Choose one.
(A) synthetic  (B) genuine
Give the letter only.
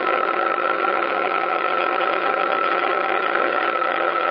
A